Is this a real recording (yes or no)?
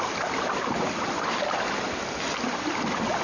yes